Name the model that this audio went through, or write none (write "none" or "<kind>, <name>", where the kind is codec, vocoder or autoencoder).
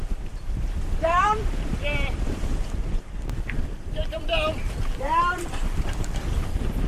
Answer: vocoder, BigVGAN v2